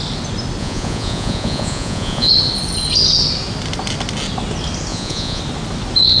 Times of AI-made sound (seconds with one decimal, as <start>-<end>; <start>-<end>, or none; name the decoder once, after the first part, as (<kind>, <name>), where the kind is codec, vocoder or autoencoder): 0.6-2.3 (vocoder, Vocos); 4.9-5.4